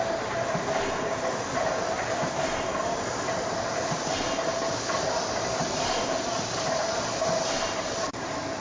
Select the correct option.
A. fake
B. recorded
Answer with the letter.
B